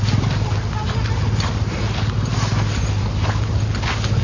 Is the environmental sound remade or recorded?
recorded